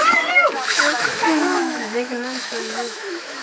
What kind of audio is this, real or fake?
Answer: fake